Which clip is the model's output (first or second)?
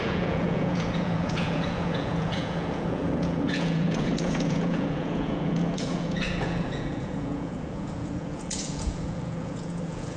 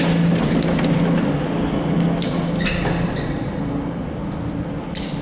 first